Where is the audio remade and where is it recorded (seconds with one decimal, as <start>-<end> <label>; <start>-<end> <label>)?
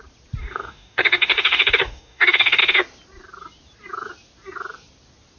0.0-0.4 recorded; 0.4-2.6 remade; 2.6-5.4 recorded